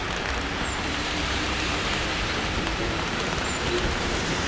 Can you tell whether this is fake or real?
fake